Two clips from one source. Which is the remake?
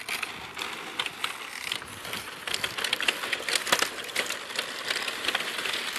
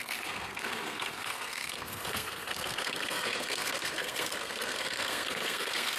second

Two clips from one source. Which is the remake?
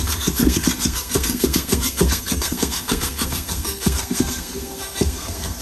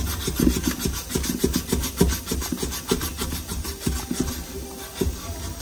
first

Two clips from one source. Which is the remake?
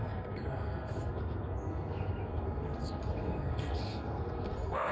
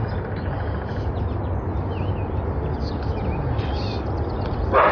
first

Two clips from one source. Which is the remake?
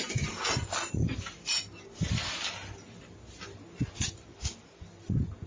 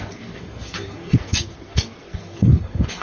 second